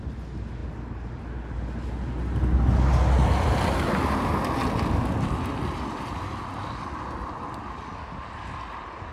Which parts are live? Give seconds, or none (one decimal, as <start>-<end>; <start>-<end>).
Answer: 0.0-9.1